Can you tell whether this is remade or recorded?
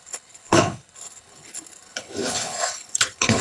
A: remade